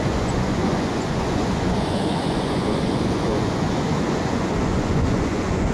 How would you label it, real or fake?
fake